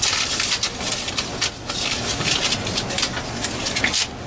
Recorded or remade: recorded